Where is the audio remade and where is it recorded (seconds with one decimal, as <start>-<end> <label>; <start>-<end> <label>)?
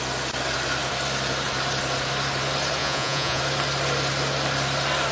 0.0-2.8 recorded; 2.8-3.4 remade; 3.4-5.1 recorded